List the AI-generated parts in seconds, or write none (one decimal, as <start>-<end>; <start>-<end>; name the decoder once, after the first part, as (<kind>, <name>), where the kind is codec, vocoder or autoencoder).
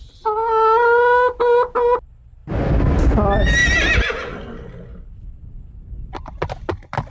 none